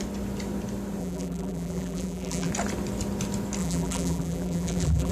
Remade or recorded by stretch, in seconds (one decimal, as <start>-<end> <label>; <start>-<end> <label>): 0.0-1.0 recorded; 1.0-2.5 remade; 2.5-3.6 recorded; 3.6-5.1 remade

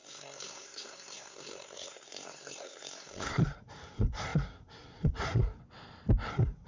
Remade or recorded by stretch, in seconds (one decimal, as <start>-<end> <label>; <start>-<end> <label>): 0.0-5.6 remade; 5.6-6.3 recorded; 6.3-6.7 remade

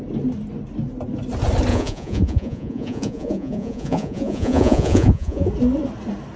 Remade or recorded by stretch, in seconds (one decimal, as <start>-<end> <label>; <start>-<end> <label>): 0.0-1.7 recorded; 1.7-5.5 remade; 5.5-6.4 recorded

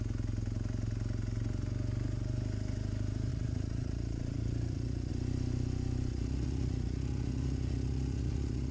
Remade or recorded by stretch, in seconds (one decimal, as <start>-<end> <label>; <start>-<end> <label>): 0.0-3.3 recorded; 3.3-5.1 remade; 5.1-6.1 recorded; 6.1-8.7 remade

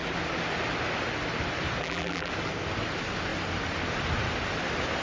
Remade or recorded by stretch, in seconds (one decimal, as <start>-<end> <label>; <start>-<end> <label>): 0.0-1.8 recorded; 1.8-2.3 remade; 2.3-5.0 recorded

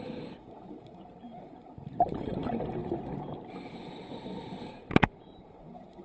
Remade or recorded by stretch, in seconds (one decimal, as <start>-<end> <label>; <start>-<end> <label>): 0.0-2.8 remade; 2.8-4.6 recorded; 4.6-6.0 remade

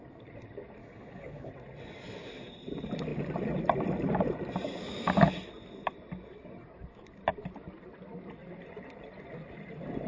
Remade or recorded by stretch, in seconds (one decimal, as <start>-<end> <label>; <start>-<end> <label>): 0.0-0.8 recorded; 0.8-1.5 remade; 1.5-10.1 recorded